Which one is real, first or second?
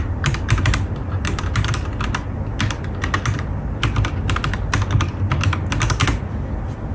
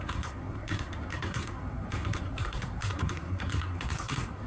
first